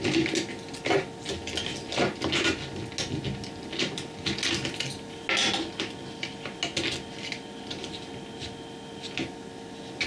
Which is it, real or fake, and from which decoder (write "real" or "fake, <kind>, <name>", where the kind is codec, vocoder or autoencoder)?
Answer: real